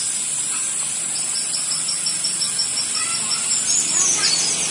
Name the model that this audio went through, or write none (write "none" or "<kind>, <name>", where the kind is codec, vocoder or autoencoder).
none